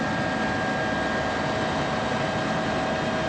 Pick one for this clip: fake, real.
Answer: real